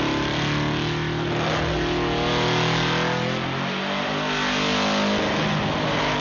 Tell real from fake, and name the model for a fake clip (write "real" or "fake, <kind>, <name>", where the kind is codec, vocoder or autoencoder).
real